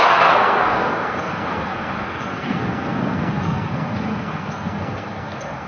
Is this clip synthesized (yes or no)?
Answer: yes